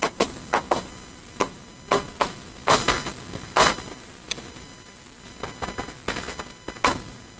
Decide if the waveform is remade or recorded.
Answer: recorded